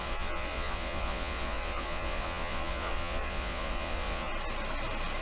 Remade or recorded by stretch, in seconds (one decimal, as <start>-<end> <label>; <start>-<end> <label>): 0.0-4.3 remade; 4.3-5.2 recorded